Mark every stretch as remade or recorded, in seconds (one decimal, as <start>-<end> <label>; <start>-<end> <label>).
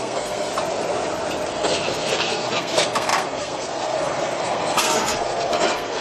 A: 0.0-0.5 remade; 0.5-1.5 recorded; 1.5-6.0 remade